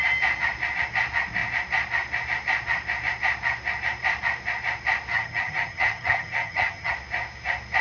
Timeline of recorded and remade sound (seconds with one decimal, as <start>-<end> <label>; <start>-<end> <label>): 0.0-5.1 recorded; 5.1-6.9 remade; 6.9-7.8 recorded